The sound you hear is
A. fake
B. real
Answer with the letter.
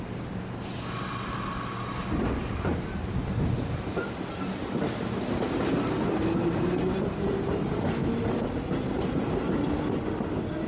B